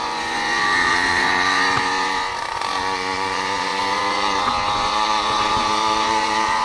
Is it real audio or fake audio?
fake